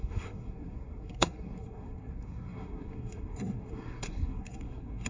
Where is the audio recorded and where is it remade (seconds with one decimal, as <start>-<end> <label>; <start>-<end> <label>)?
0.0-5.1 remade